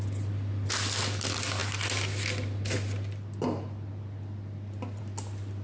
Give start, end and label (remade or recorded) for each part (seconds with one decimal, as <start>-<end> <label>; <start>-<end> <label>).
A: 0.0-5.6 recorded